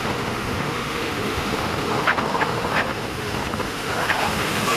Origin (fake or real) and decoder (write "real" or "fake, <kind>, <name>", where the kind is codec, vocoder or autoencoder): fake, autoencoder, DAC-VAE